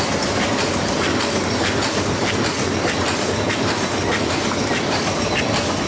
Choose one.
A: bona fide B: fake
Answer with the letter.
A